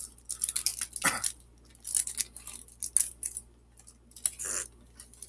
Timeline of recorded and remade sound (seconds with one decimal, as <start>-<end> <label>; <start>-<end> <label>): 0.0-5.3 recorded